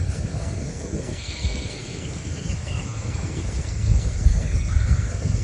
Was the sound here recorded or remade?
remade